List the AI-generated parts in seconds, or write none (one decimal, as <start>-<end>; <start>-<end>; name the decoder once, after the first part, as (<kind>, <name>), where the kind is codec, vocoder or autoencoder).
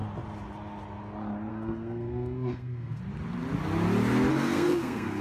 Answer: 1.5-3.0 (codec, SNAC); 4.3-5.2